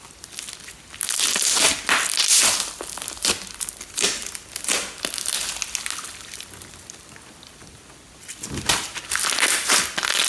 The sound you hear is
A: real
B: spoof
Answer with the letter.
A